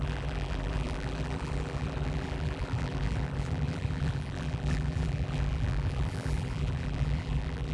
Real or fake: fake